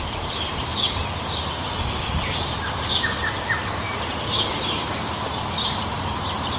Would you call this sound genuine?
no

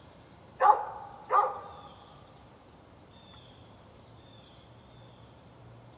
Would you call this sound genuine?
no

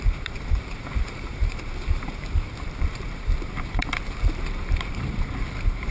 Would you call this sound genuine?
no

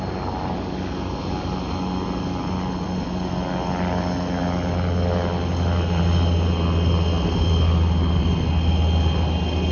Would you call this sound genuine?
yes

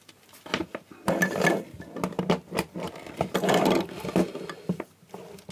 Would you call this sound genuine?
yes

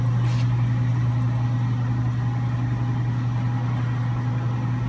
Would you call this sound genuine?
yes